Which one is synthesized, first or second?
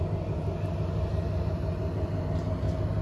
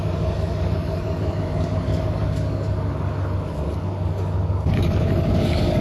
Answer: second